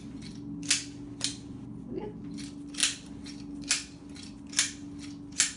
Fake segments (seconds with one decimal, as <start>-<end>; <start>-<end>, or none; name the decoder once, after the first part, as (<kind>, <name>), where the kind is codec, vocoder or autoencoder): none